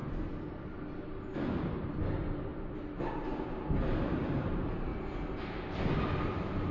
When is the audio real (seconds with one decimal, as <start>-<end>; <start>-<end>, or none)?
0.0-1.8; 4.9-6.3